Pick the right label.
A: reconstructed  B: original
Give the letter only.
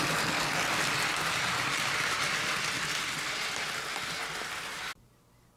B